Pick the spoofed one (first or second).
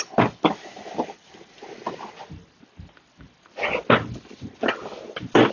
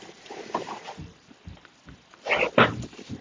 second